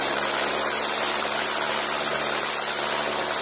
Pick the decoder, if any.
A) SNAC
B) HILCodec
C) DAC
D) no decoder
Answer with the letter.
D